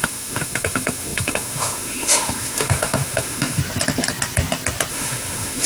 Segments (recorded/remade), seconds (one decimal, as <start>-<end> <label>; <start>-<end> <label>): 0.0-3.6 remade; 3.6-4.9 recorded; 4.9-5.7 remade